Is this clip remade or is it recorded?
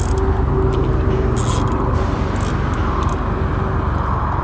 recorded